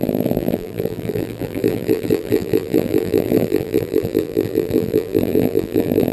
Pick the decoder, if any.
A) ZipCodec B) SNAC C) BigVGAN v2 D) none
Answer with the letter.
C